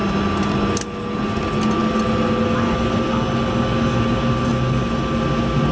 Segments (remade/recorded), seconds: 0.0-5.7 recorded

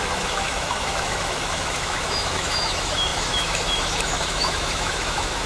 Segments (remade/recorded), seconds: 0.0-5.5 remade

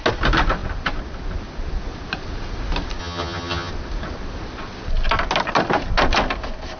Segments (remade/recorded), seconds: 0.0-3.0 recorded; 3.0-3.7 remade; 3.7-6.8 recorded

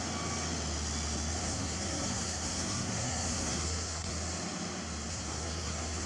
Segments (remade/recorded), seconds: 0.0-1.4 recorded; 1.4-4.1 remade; 4.1-5.1 recorded; 5.1-6.1 remade

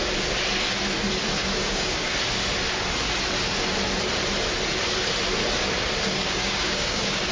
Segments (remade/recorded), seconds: 0.0-1.4 recorded; 1.4-2.1 remade; 2.1-6.0 recorded; 6.0-7.3 remade

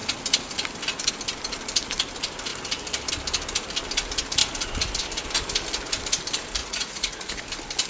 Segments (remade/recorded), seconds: 0.0-6.6 recorded; 6.6-7.4 remade; 7.4-7.9 recorded

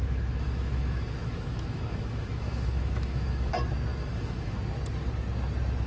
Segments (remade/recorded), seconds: 0.0-3.5 remade; 3.5-3.9 recorded; 3.9-4.6 remade; 4.6-5.9 recorded